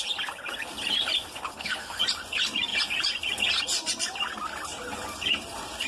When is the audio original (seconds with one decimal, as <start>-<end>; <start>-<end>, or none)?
0.0-1.5; 2.0-5.9